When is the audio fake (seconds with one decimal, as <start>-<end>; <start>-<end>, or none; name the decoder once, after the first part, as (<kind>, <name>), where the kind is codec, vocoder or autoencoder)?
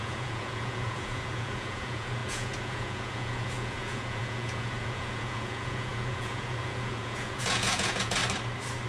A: 0.0-8.2 (vocoder, Vocos)